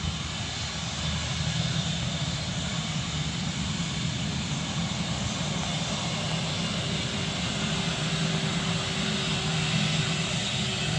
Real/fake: real